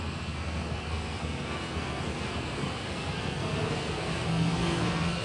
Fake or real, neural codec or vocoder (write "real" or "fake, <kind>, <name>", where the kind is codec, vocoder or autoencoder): fake, codec, SNAC